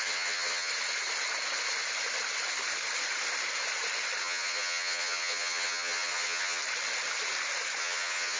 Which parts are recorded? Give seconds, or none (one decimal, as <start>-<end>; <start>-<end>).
0.7-4.2; 6.6-7.8